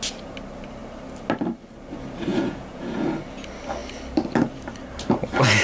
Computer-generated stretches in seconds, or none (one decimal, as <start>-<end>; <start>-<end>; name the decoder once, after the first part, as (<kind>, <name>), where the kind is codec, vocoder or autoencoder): 2.3-3.1 (vocoder, Vocos)